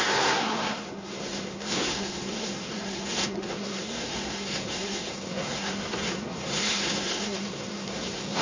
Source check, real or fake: fake